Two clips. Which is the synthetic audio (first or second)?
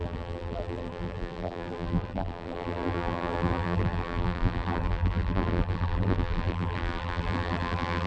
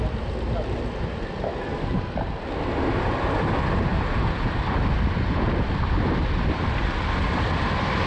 first